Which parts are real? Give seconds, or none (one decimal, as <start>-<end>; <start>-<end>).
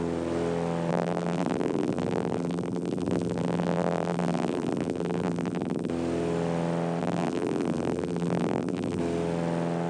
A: 0.0-0.9; 5.9-7.0; 9.0-9.9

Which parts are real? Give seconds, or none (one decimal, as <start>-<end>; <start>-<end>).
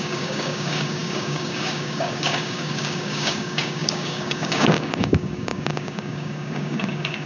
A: none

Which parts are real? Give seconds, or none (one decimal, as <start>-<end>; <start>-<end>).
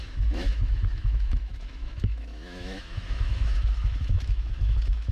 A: none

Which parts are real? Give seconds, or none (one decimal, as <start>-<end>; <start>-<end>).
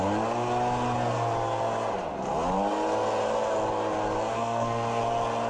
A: 0.0-4.3; 5.0-5.5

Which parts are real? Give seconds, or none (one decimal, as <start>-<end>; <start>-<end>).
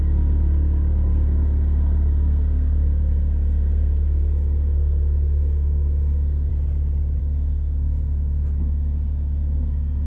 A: 6.5-7.2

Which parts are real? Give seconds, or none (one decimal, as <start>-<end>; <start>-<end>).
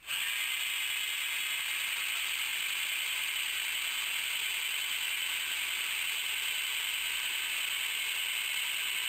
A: 0.0-9.1